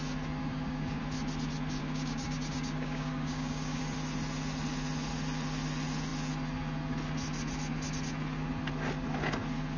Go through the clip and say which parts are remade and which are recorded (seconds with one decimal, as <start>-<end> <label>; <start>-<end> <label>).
0.0-0.4 recorded; 0.4-1.0 remade; 1.0-1.8 recorded; 1.8-3.8 remade; 3.8-9.8 recorded

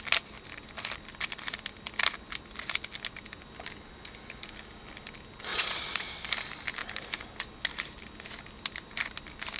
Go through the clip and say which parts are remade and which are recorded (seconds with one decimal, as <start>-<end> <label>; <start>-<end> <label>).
0.0-5.5 recorded; 5.5-6.1 remade; 6.1-9.6 recorded

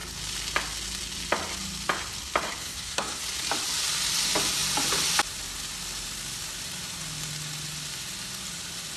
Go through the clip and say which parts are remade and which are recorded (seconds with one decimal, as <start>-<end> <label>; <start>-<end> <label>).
0.0-2.6 recorded; 2.6-3.2 remade; 3.2-9.0 recorded

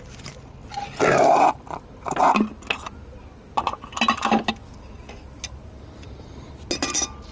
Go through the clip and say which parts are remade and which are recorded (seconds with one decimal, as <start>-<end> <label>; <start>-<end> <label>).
0.0-7.3 recorded

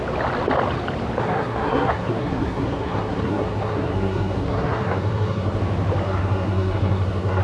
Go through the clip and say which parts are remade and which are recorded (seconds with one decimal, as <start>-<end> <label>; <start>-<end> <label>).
0.0-1.2 recorded; 1.2-5.6 remade; 5.6-6.0 recorded; 6.0-7.4 remade

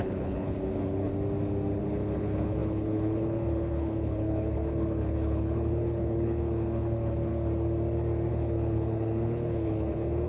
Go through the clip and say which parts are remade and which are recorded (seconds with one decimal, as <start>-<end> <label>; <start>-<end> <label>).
0.0-1.1 remade; 1.1-1.8 recorded; 1.8-7.3 remade; 7.3-8.3 recorded; 8.3-10.3 remade